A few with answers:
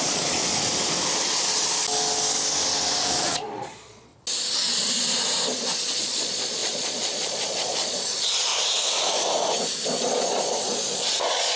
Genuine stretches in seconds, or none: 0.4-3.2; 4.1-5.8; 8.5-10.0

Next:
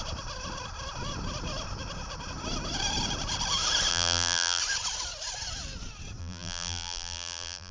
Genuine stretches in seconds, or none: 0.0-3.9; 4.6-6.2

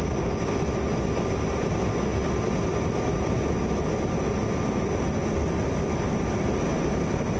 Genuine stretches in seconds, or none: 0.0-7.4

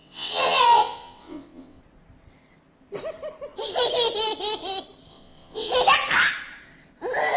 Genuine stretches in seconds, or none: 1.8-5.1; 5.7-7.4

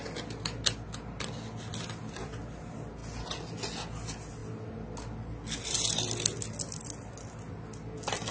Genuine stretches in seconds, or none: 0.0-8.3

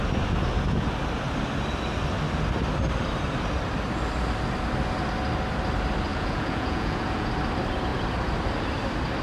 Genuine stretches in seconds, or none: 0.0-6.1; 7.3-9.2